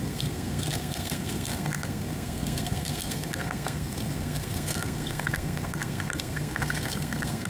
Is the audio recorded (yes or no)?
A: no